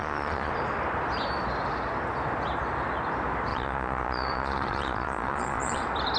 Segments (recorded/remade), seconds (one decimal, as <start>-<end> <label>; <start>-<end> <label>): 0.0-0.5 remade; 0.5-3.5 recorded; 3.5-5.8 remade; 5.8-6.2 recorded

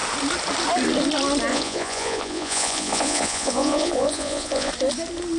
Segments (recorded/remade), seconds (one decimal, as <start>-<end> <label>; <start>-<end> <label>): 0.0-1.5 recorded; 1.5-4.7 remade; 4.7-5.4 recorded

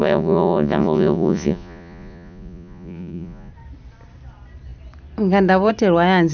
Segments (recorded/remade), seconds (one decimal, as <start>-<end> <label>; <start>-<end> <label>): 0.0-3.5 remade; 3.5-6.3 recorded

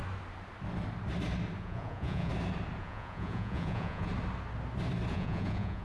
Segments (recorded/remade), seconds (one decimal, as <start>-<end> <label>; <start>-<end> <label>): 0.0-1.6 recorded; 1.6-2.3 remade; 2.3-2.8 recorded; 2.8-4.1 remade; 4.1-5.1 recorded; 5.1-5.8 remade

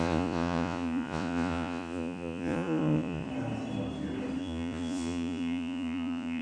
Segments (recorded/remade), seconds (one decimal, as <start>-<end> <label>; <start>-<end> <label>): 0.0-3.3 remade; 3.3-4.4 recorded; 4.4-6.4 remade

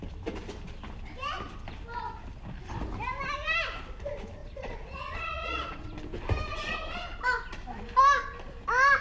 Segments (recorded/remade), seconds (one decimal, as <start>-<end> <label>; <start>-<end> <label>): 0.0-4.4 recorded; 4.4-5.9 remade; 5.9-9.0 recorded

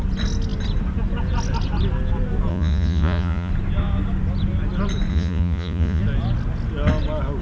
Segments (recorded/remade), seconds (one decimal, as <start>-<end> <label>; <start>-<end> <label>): 0.0-2.5 recorded; 2.5-3.5 remade; 3.5-5.1 recorded; 5.1-6.0 remade; 6.0-7.4 recorded